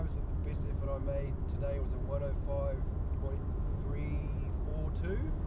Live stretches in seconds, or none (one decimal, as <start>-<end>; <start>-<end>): 0.0-5.5